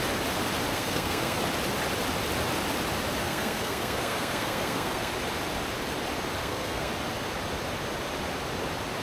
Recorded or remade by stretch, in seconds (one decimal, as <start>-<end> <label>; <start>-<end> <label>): 0.0-0.7 recorded; 0.7-1.4 remade; 1.4-3.2 recorded; 3.2-5.1 remade; 5.1-6.4 recorded; 6.4-6.9 remade; 6.9-9.0 recorded